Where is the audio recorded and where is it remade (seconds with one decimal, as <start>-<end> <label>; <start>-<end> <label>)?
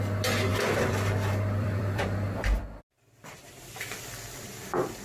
0.0-0.5 recorded; 0.5-3.5 remade; 3.5-5.0 recorded